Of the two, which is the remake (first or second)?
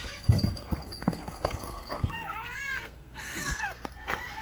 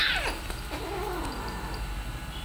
first